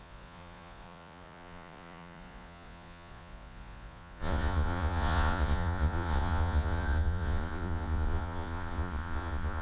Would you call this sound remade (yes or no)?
yes